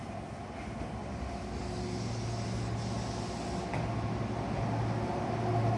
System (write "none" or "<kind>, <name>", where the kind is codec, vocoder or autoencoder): none